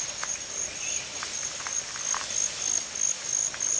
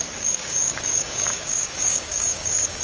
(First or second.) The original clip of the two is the first